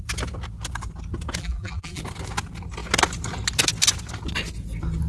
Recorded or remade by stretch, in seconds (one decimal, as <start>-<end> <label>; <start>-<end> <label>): 0.0-1.4 recorded; 1.4-2.0 remade; 2.0-5.1 recorded